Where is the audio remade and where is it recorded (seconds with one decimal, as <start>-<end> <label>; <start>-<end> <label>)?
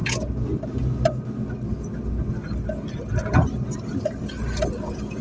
0.0-5.2 recorded